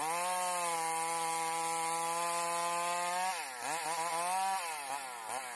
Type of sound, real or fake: real